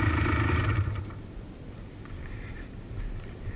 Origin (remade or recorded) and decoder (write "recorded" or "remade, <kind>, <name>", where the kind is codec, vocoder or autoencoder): remade, vocoder, BigVGAN v2